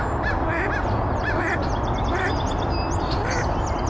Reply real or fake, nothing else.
real